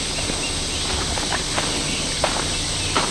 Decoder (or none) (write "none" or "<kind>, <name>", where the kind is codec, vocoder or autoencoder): none